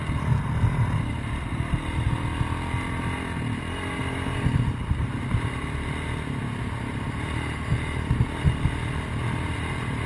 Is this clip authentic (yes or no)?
yes